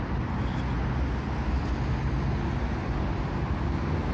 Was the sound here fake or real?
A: real